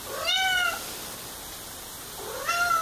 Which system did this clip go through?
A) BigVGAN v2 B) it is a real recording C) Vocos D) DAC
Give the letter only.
B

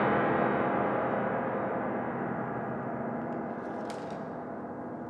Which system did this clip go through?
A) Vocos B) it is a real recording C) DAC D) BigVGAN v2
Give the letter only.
B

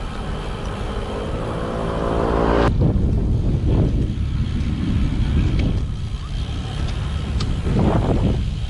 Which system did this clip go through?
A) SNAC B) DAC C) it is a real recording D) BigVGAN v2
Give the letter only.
C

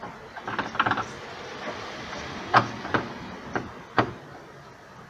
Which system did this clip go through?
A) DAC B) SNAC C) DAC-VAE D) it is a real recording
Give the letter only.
D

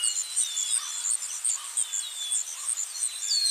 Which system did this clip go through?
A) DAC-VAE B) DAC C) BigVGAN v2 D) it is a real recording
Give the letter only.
D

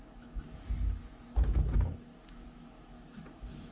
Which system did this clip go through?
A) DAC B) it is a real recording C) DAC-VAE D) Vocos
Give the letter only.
C